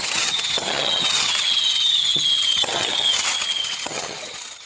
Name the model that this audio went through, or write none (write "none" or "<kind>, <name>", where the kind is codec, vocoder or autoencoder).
vocoder, HiFi-GAN